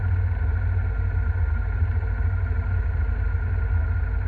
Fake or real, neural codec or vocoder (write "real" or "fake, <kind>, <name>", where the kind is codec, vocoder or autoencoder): real